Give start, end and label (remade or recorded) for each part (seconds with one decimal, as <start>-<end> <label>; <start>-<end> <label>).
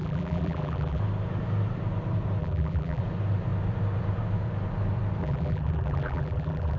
0.0-1.0 remade; 1.0-2.4 recorded; 2.4-3.0 remade; 3.0-5.2 recorded; 5.2-6.8 remade